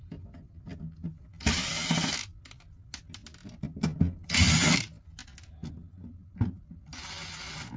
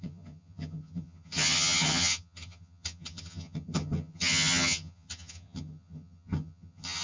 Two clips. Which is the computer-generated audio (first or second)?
second